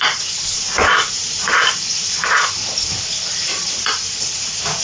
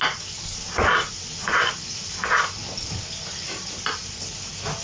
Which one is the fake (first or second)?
first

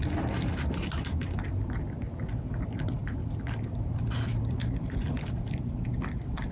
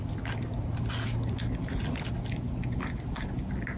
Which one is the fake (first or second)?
first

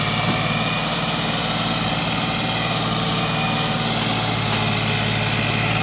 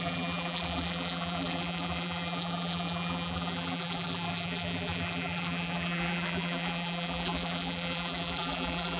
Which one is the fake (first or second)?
second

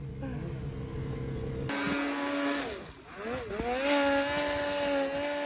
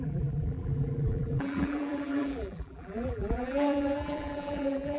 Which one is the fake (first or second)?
second